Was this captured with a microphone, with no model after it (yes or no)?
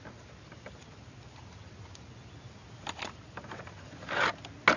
yes